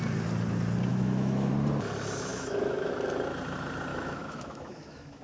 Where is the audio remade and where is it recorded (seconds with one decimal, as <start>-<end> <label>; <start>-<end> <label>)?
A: 0.0-0.9 recorded; 0.9-1.5 remade; 1.5-2.3 recorded; 2.3-2.9 remade; 2.9-3.9 recorded; 3.9-5.2 remade